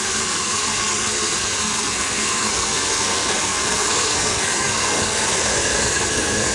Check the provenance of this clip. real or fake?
fake